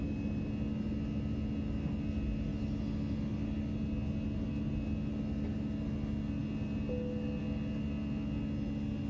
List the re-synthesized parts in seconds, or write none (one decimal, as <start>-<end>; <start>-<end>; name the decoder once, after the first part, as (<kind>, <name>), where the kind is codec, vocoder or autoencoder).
none